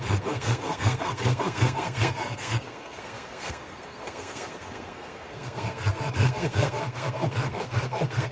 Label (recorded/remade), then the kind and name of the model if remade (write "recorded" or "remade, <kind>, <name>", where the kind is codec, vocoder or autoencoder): remade, codec, SNAC